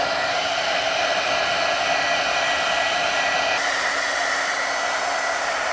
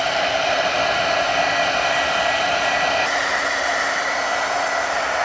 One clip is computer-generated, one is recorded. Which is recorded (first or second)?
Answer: first